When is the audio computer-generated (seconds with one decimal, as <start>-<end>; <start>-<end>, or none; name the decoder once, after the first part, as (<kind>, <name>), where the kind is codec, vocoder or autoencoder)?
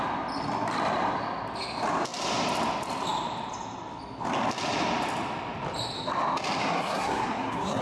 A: 6.6-7.8 (codec, SNAC)